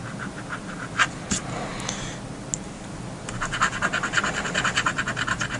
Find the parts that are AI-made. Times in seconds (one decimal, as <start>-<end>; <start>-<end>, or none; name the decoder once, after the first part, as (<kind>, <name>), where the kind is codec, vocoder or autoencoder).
none

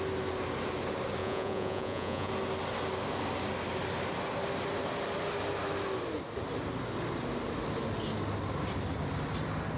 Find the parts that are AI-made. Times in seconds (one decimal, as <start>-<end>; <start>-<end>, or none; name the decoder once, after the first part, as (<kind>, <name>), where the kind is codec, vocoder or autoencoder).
1.2-2.3 (vocoder, Vocos)

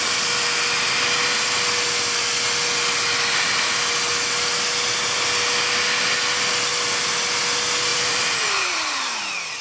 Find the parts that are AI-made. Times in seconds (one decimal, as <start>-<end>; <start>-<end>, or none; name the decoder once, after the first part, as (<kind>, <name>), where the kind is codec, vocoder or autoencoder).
7.9-9.2 (vocoder, BigVGAN v2)

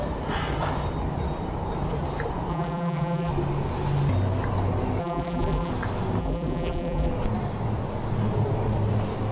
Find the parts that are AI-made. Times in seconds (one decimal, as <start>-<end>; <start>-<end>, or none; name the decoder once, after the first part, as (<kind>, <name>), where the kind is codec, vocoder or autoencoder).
2.5-3.3 (vocoder, BigVGAN v2); 5.0-5.7; 6.2-7.1

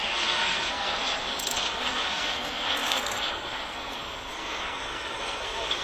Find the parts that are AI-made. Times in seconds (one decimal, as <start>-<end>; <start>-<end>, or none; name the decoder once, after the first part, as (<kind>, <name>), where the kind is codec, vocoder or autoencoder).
0.0-5.8 (codec, SNAC)

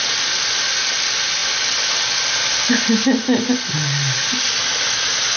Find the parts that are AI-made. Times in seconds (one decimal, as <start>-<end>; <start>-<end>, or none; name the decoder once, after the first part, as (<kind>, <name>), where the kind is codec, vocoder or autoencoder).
none

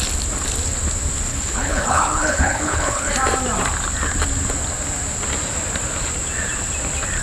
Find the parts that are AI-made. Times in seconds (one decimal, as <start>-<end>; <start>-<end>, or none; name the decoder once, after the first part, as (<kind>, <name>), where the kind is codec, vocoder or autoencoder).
1.3-3.1 (codec, HILCodec)